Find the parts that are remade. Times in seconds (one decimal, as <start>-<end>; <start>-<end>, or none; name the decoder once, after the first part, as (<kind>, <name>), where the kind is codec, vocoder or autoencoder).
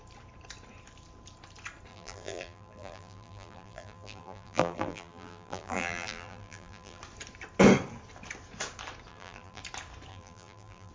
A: 1.9-7.0 (vocoder, BigVGAN v2); 9.1-9.6; 10.1-10.9